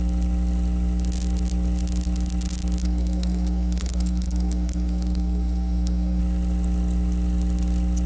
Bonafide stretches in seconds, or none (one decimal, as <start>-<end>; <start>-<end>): 0.0-2.8; 6.2-8.1